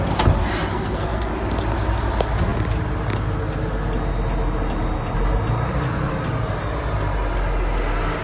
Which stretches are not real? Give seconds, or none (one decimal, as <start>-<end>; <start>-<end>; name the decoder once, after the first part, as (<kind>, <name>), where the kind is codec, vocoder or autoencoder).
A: 0.7-1.3 (codec, SNAC)